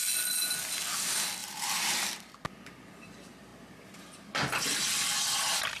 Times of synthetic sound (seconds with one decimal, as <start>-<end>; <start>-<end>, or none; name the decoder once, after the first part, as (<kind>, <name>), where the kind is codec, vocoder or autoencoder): 1.4-2.3 (vocoder, BigVGAN v2)